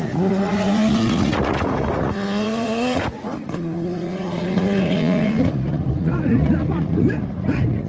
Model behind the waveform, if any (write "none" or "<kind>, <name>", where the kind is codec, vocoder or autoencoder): vocoder, Vocos